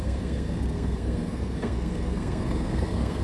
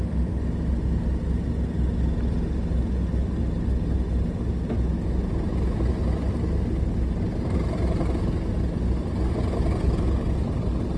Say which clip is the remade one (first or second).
first